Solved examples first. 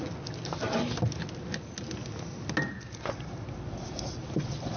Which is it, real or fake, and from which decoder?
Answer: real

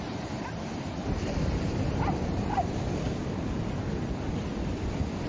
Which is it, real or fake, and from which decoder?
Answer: real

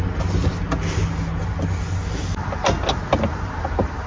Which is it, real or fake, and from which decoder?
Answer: real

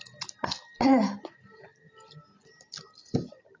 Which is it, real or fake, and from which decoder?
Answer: real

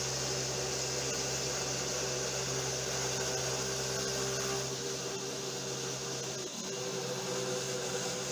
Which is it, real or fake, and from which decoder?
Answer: real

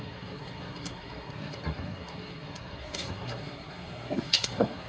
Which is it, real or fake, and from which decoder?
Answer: fake, codec, SNAC